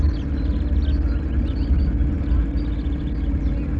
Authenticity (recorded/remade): recorded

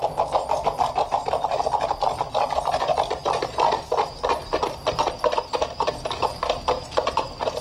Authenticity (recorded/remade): recorded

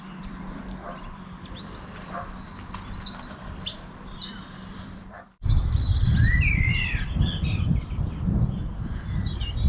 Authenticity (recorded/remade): remade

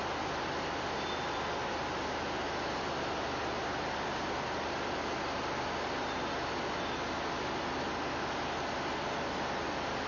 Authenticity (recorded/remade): recorded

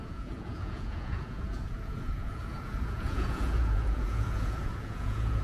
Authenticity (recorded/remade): remade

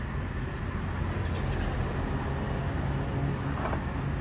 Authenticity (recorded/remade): recorded